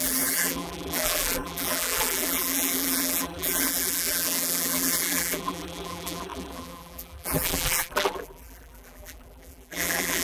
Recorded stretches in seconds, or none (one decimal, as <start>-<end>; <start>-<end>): none